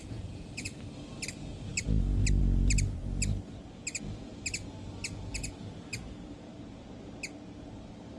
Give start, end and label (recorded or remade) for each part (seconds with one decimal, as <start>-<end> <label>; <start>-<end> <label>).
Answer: 0.0-0.8 remade; 0.8-8.2 recorded